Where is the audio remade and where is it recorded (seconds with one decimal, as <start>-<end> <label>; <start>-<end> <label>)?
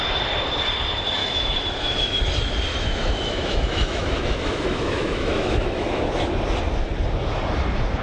0.0-1.2 recorded; 1.2-2.2 remade; 2.2-2.7 recorded; 2.7-6.0 remade; 6.0-8.0 recorded